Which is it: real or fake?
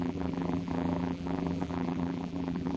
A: fake